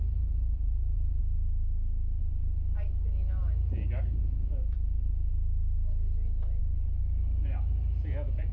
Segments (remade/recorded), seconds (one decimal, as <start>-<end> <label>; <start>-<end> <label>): 0.0-1.2 remade; 1.2-2.2 recorded; 2.2-3.4 remade; 3.4-4.2 recorded; 4.2-5.3 remade; 5.3-6.6 recorded; 6.6-7.0 remade; 7.0-8.1 recorded; 8.1-8.5 remade